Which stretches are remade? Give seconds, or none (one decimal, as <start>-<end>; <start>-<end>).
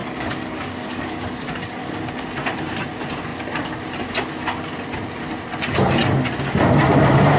0.0-2.0